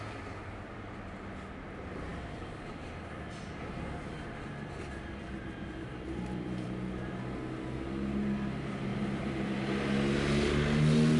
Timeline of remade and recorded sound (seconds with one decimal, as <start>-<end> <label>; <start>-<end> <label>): 0.0-2.1 recorded; 2.1-7.1 remade; 7.1-8.9 recorded; 8.9-9.7 remade; 9.7-11.2 recorded